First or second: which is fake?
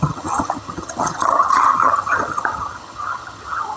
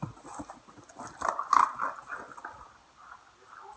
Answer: first